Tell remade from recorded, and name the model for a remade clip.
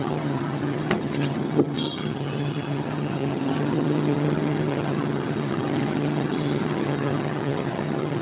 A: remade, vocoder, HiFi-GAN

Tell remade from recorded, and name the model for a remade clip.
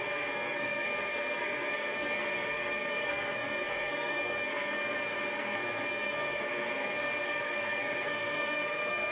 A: remade, codec, SNAC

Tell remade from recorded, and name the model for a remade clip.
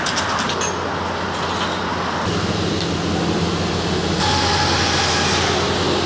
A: recorded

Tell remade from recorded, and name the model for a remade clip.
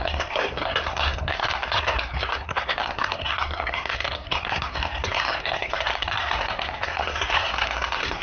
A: remade, codec, SNAC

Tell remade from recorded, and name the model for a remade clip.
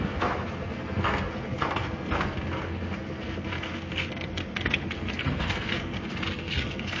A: remade, codec, SNAC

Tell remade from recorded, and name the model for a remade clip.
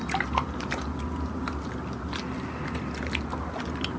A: recorded